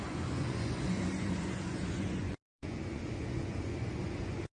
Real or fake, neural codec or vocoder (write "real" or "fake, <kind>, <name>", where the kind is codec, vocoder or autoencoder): fake, vocoder, Vocos